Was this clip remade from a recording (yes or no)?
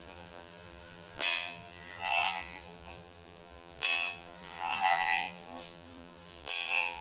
yes